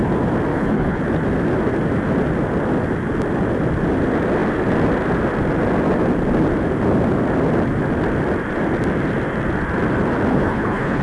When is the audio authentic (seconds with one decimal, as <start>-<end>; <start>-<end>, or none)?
0.0-0.5; 1.0-10.3